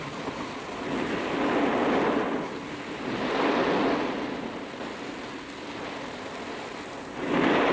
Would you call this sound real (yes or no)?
yes